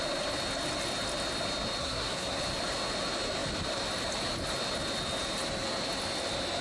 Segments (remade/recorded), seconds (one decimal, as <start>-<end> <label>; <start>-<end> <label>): 0.0-1.8 recorded; 1.8-2.4 remade; 2.4-6.6 recorded